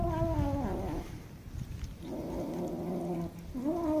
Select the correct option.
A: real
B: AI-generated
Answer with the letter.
A